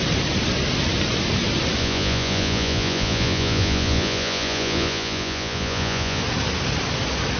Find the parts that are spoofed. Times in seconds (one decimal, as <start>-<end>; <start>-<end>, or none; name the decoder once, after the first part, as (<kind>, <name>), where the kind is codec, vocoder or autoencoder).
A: 1.8-6.2 (vocoder, Vocos)